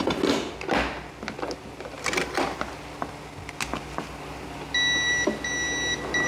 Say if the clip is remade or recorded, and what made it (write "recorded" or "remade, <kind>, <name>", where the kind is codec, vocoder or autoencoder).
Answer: recorded